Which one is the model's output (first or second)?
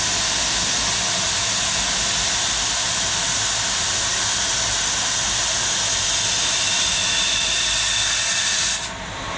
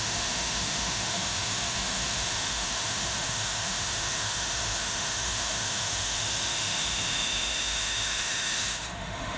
second